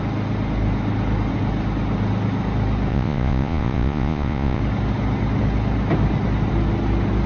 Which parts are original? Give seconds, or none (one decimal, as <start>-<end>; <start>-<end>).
0.0-2.9; 4.6-7.3